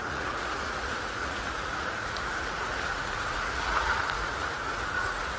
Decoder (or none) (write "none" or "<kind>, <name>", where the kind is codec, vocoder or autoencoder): vocoder, Vocos